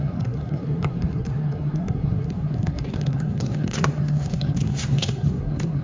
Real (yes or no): no